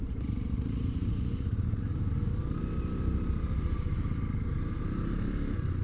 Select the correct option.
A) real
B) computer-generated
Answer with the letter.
B